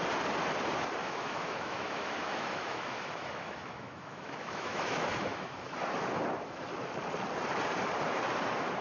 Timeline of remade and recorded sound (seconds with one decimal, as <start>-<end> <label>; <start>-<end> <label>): 0.0-1.0 recorded; 1.0-5.7 remade; 5.7-8.8 recorded